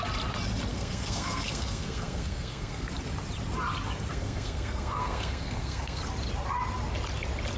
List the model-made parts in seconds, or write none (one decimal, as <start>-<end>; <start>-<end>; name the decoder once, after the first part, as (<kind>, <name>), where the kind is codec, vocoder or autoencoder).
0.7-2.9 (codec, SNAC); 4.1-6.0